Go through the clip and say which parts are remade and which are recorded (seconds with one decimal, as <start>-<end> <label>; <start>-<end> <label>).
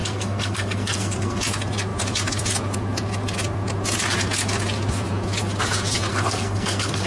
0.0-1.4 remade; 1.4-6.1 recorded; 6.1-7.1 remade